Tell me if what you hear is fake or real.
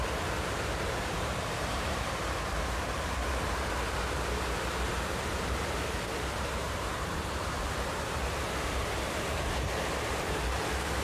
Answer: fake